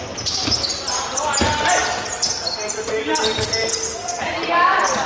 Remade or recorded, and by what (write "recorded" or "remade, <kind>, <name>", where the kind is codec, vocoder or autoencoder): recorded